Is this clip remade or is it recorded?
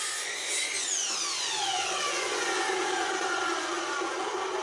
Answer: remade